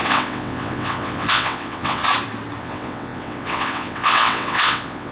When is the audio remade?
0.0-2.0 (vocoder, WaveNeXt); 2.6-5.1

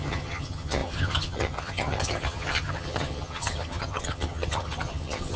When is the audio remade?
0.0-5.4 (vocoder, HiFi-GAN)

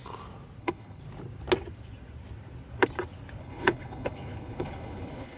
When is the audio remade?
0.6-1.0 (codec, HILCodec); 3.4-5.4

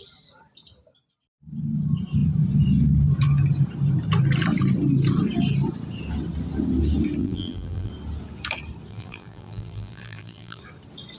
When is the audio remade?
7.2-7.9 (vocoder, BigVGAN v2); 8.9-10.6

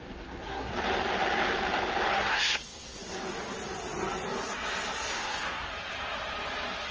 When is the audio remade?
0.0-0.7 (codec, SNAC); 2.1-3.0; 5.1-5.7